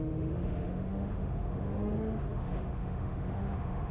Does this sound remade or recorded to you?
remade